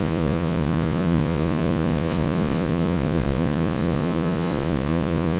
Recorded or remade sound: remade